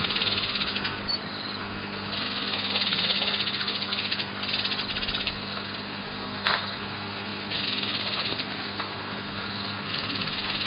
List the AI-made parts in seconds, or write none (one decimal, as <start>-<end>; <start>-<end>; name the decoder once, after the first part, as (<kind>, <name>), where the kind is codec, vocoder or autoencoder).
0.0-1.0 (codec, SNAC); 1.6-4.3; 5.2-10.7